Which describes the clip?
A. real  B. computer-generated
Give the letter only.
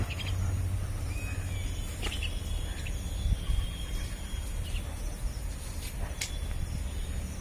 A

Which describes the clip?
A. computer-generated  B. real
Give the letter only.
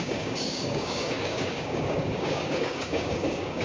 A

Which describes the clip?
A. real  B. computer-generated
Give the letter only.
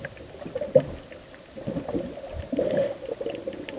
A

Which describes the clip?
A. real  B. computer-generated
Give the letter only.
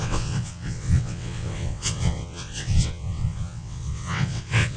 B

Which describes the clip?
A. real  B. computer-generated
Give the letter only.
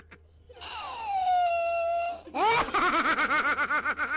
A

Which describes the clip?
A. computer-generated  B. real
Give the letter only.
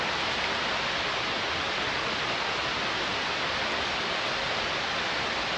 B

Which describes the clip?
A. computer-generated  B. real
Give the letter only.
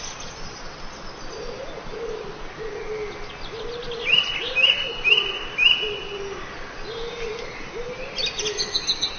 B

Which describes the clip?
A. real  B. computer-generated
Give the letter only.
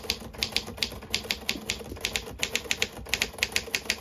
A